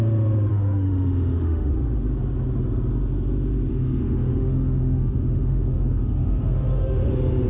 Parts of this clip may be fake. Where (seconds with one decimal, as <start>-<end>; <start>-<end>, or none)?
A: 0.5-1.7; 3.7-7.1